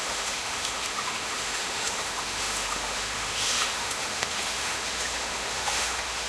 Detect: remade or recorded remade